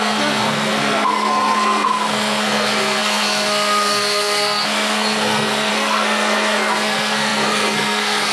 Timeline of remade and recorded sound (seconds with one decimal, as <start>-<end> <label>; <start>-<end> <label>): 0.0-8.3 remade